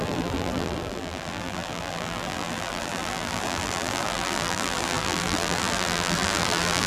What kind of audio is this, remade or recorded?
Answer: remade